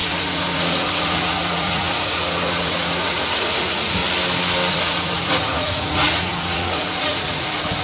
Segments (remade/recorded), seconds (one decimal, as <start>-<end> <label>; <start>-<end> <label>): 0.0-4.0 remade; 4.0-4.7 recorded; 4.7-7.8 remade